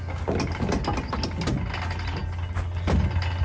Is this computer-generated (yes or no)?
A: no